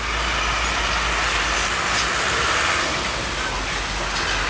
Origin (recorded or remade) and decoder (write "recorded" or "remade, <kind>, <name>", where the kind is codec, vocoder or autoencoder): recorded